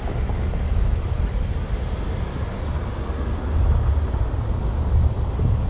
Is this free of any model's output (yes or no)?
yes